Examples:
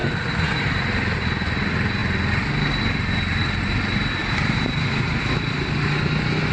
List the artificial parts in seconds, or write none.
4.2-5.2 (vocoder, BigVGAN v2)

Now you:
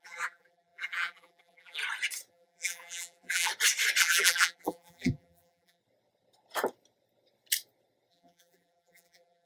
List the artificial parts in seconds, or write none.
0.0-1.8 (vocoder, BigVGAN v2); 2.3-3.5; 4.0-5.8; 8.1-9.5